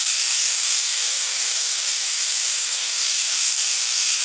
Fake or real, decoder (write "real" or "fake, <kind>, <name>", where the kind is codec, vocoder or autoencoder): fake, codec, DAC